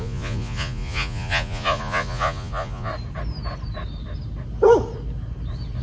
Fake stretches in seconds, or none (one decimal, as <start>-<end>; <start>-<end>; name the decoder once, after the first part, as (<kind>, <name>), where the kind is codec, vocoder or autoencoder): 0.0-2.9 (vocoder, Vocos)